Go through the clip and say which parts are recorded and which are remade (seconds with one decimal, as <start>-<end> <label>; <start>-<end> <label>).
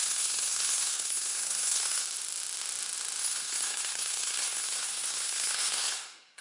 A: 0.0-2.0 remade; 2.0-3.2 recorded; 3.2-6.4 remade